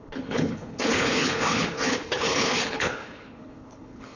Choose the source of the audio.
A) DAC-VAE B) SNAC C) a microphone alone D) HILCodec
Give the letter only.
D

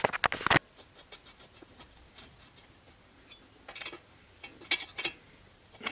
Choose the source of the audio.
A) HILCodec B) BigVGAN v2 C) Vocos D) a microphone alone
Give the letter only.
D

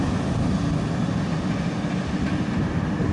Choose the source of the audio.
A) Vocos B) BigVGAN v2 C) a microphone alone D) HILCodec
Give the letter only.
C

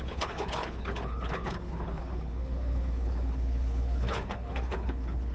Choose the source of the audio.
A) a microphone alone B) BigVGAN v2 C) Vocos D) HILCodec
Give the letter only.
D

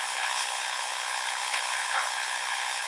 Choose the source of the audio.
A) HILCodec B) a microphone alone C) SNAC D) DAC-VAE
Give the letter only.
A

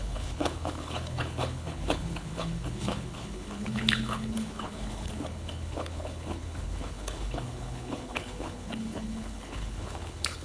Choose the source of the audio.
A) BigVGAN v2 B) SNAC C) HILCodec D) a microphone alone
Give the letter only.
C